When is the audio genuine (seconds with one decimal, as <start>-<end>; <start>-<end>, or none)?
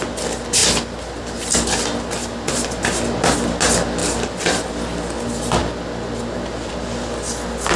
0.0-7.8